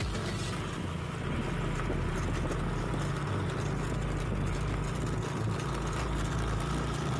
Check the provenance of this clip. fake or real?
real